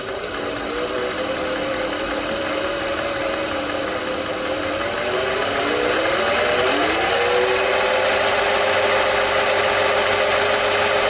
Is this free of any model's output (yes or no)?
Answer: yes